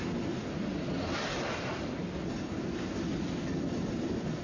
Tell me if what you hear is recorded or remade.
recorded